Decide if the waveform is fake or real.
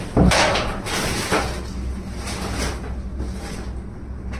real